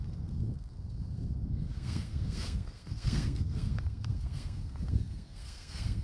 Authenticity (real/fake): fake